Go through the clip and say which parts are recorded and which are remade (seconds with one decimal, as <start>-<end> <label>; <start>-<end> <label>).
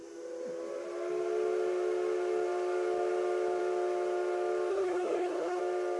0.0-4.7 recorded; 4.7-5.6 remade; 5.6-6.0 recorded